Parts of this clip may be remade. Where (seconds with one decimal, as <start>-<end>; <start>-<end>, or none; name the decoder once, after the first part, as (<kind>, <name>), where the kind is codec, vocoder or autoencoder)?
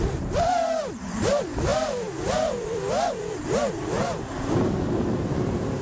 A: 0.0-5.8 (vocoder, BigVGAN v2)